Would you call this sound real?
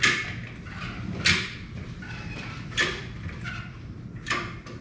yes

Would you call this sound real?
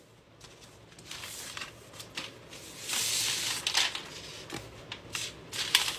yes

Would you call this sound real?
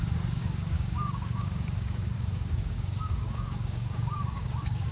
no